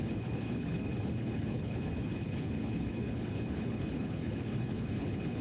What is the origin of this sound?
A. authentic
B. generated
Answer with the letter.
B